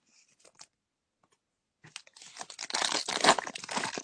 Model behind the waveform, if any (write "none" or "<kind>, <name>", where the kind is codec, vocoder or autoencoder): none